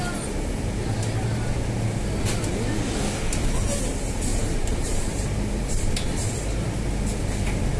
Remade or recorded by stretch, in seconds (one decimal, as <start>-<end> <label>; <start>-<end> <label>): 0.0-4.3 recorded; 4.3-6.3 remade; 6.3-7.8 recorded

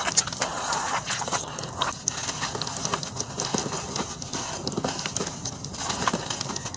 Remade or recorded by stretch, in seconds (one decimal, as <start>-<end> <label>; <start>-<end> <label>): 0.0-0.5 recorded; 0.5-1.6 remade; 1.6-6.8 recorded

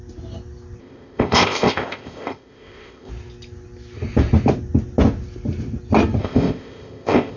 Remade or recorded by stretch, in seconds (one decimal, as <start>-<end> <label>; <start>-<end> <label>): 0.0-0.8 recorded; 0.8-3.1 remade; 3.1-6.2 recorded; 6.2-7.4 remade

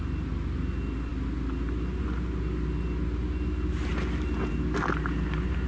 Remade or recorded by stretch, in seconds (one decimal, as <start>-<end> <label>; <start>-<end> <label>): 0.0-5.7 recorded

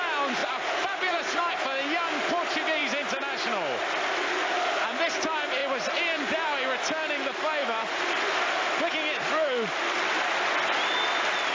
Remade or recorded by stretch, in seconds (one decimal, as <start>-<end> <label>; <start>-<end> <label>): 0.0-0.4 recorded; 0.4-1.4 remade; 1.4-11.5 recorded

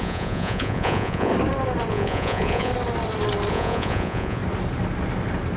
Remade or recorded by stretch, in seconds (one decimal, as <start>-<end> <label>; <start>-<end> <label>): 0.0-1.3 remade; 1.3-1.9 recorded; 1.9-2.7 remade; 2.7-3.5 recorded; 3.5-4.4 remade; 4.4-5.6 recorded